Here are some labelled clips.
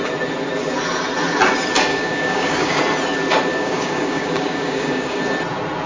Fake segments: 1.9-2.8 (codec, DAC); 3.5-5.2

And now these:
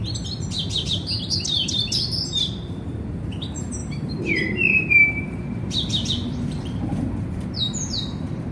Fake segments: 0.0-8.5 (vocoder, BigVGAN v2)

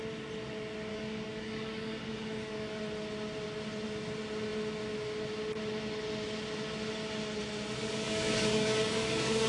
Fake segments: 0.9-2.8 (codec, DAC); 7.8-9.5

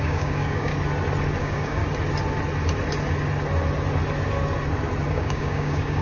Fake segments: 0.0-0.7 (codec, DAC); 1.4-1.8; 5.1-6.0

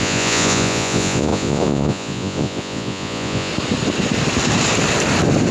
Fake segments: 0.0-3.5 (vocoder, Vocos)

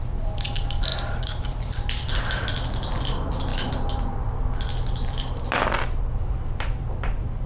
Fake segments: 0.0-7.5 (vocoder, BigVGAN v2)